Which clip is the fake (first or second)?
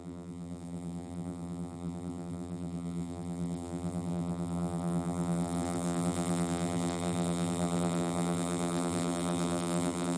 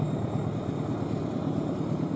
first